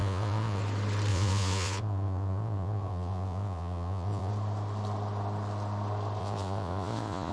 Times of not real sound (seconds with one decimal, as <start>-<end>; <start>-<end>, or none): 0.0-0.6; 1.1-4.3; 6.2-7.3

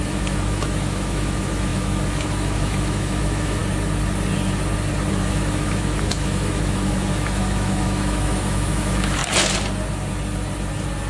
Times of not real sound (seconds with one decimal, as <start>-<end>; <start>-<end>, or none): 0.0-3.6; 5.1-9.2

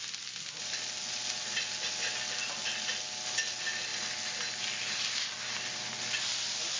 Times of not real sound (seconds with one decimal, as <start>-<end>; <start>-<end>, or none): none

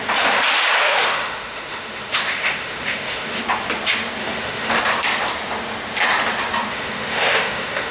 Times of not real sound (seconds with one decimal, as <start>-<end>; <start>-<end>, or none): 0.8-3.4; 4.2-4.7; 6.7-7.9

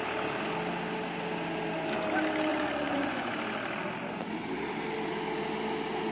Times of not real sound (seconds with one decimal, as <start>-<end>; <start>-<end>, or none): 2.5-3.3

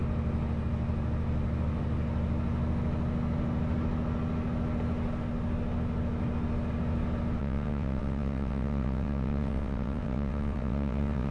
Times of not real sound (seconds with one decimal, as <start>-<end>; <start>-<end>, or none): 7.4-11.3